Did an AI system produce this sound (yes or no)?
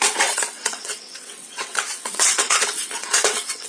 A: yes